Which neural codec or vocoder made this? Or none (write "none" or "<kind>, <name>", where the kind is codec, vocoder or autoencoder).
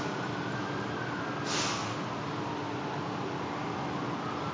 none